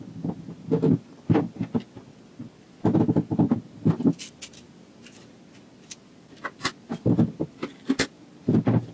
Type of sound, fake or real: real